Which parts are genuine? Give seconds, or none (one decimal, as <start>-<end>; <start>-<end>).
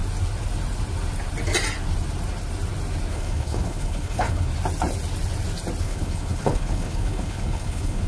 0.0-3.1; 4.5-5.8